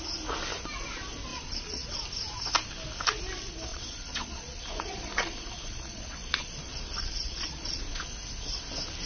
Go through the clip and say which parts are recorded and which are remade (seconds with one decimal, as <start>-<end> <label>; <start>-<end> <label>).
0.0-1.3 recorded; 1.3-2.0 remade; 2.0-3.7 recorded; 3.7-8.1 remade; 8.1-9.1 recorded